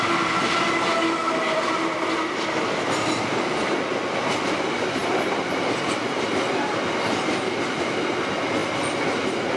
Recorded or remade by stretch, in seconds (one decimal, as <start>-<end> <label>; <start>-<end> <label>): 0.0-9.6 recorded